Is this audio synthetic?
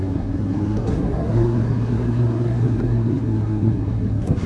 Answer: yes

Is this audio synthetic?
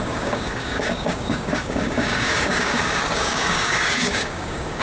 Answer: yes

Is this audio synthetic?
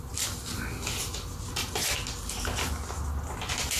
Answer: no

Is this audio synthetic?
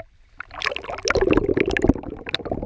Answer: no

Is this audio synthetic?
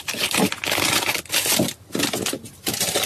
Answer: no